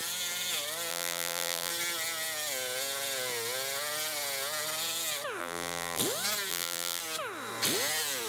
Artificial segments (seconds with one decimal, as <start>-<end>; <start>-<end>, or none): 0.9-1.7; 5.4-6.0; 6.5-7.0